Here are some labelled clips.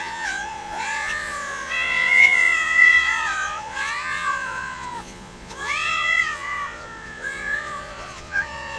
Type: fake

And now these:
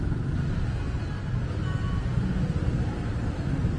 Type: real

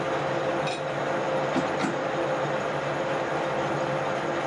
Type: real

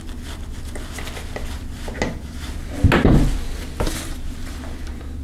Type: real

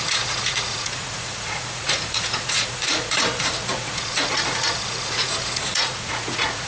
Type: fake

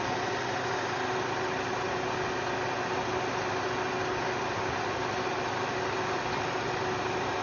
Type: real